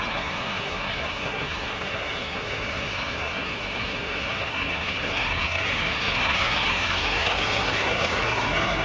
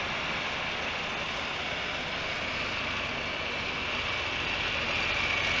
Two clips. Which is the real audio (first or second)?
second